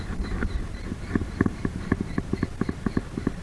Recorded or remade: recorded